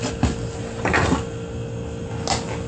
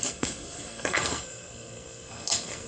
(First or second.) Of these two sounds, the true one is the first